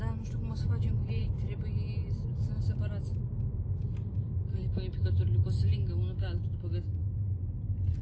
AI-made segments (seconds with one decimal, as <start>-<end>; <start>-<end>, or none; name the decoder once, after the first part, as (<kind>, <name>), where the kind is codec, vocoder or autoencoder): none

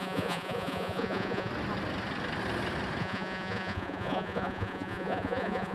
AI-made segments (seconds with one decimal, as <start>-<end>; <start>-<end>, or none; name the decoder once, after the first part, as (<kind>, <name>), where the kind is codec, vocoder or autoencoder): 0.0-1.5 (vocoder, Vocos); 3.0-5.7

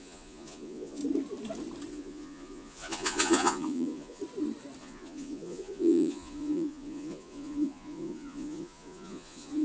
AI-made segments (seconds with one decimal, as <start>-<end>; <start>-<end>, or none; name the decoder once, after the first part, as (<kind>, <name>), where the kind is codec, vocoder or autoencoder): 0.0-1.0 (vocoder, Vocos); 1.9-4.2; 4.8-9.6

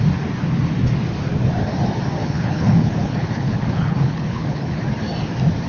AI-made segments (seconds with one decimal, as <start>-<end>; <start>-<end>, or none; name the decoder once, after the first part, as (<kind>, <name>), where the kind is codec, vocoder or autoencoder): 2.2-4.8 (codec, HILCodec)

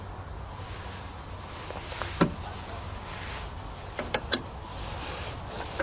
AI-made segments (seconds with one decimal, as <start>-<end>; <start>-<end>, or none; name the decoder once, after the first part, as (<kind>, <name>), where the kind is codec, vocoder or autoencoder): none